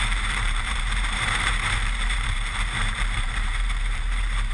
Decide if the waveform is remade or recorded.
remade